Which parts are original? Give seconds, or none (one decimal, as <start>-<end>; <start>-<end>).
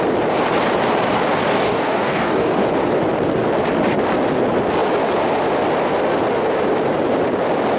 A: 0.0-1.5; 2.5-7.8